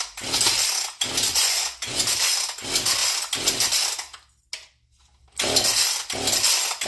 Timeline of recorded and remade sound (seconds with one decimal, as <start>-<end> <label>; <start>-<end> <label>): 0.0-1.3 recorded; 1.3-2.0 remade; 2.0-6.9 recorded